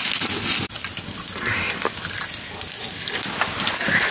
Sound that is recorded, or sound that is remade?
recorded